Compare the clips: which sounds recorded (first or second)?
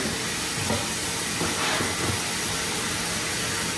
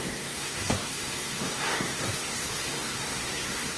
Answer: first